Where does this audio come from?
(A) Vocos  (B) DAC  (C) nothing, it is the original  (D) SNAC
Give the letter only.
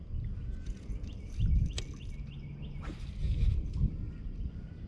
C